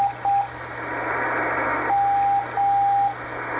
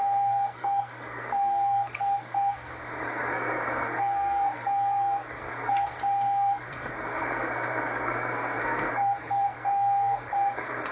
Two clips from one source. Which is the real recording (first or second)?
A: first